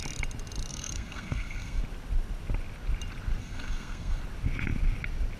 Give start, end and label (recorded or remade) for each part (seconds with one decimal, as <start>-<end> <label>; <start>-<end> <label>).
0.0-0.7 recorded; 0.7-1.8 remade; 1.8-3.4 recorded; 3.4-4.2 remade; 4.2-5.4 recorded